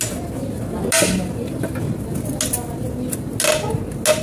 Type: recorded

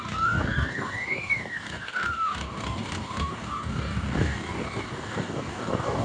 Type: remade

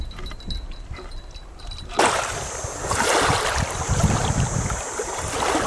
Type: recorded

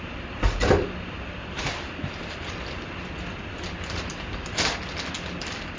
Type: recorded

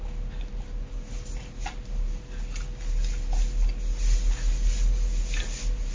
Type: recorded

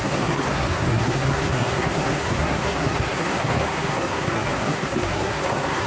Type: remade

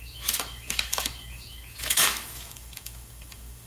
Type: remade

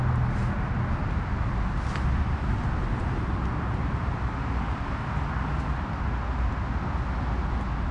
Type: recorded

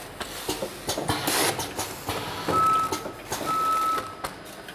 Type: recorded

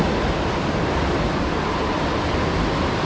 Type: recorded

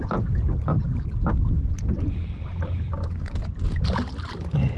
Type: recorded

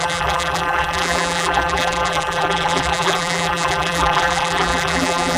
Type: remade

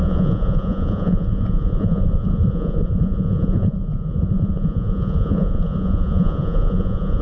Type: remade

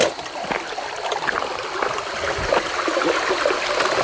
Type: recorded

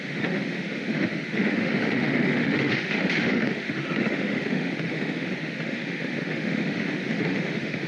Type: remade